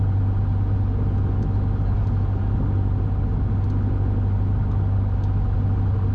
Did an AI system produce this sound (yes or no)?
no